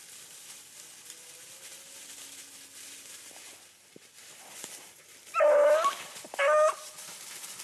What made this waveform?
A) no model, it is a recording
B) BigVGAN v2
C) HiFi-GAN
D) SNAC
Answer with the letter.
A